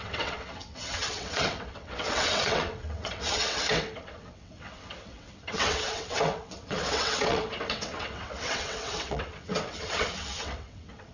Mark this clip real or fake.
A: fake